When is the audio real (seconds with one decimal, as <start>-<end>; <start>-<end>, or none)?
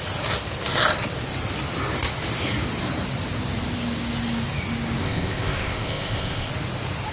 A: 0.0-5.0; 6.5-7.1